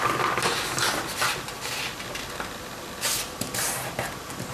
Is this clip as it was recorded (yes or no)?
yes